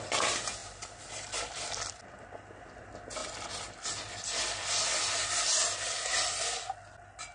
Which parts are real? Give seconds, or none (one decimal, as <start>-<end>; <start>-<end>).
0.0-0.6; 1.9-7.3

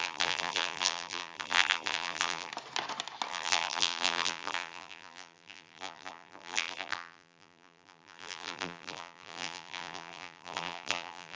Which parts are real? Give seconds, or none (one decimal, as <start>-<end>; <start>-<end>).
2.5-3.3

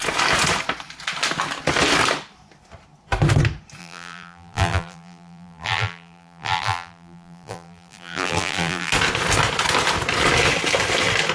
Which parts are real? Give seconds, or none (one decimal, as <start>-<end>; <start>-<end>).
0.0-3.8; 8.9-11.3